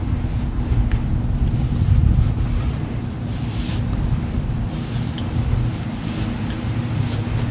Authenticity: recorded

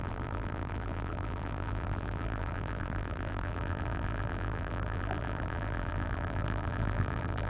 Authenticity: remade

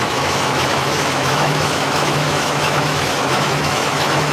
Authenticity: remade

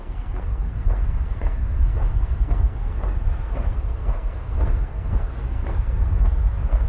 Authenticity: remade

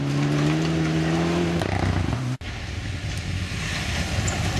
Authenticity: recorded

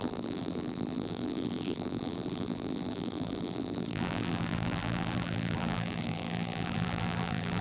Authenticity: remade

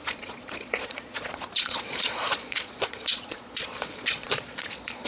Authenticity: remade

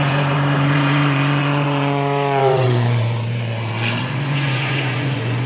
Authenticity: remade